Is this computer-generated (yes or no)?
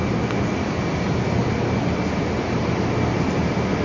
no